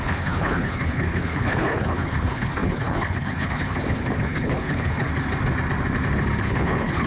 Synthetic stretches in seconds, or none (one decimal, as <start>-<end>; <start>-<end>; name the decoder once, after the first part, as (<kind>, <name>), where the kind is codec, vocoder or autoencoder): 0.0-5.1 (codec, HILCodec); 6.4-7.1